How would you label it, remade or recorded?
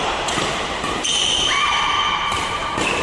remade